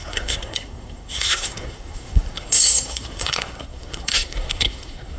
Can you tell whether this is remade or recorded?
remade